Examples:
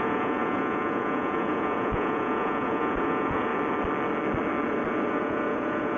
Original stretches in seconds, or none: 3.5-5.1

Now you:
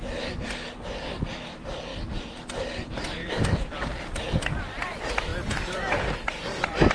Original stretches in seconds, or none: 0.0-3.2; 4.4-6.9

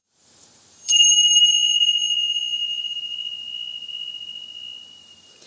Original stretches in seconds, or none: 1.5-5.5

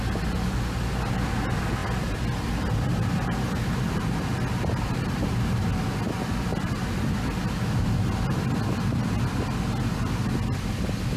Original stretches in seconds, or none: 0.0-11.2